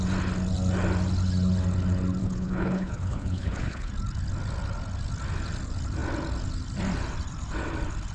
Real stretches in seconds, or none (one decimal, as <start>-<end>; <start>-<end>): 0.0-2.2; 3.9-8.1